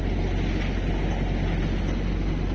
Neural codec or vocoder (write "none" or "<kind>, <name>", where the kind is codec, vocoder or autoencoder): none